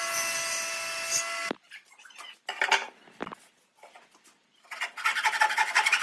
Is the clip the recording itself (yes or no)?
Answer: yes